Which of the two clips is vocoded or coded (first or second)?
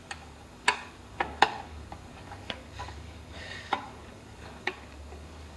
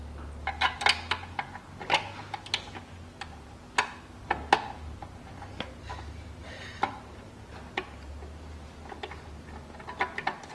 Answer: first